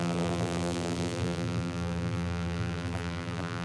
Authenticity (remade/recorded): remade